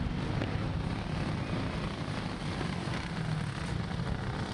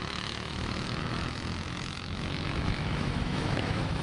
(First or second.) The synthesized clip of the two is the second